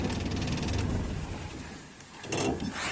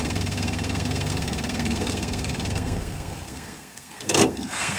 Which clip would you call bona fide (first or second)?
first